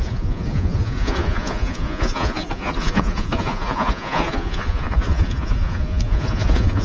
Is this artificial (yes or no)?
yes